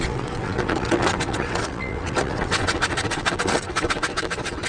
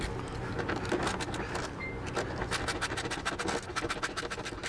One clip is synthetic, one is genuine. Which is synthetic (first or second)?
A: first